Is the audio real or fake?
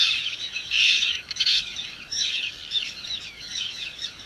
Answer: fake